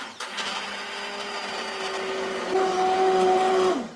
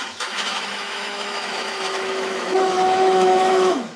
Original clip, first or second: first